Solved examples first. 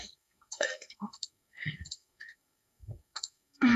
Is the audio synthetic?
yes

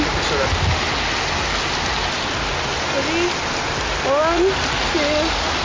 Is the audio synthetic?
no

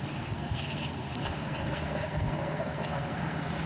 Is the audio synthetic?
yes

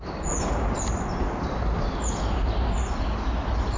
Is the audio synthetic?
no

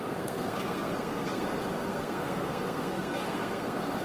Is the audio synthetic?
yes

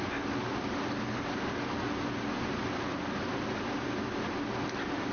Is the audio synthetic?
no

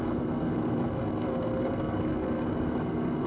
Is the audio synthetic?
yes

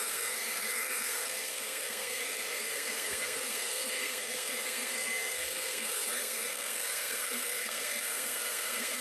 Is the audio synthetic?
yes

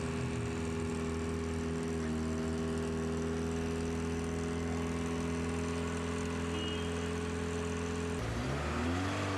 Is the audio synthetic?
no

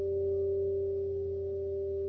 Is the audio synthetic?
no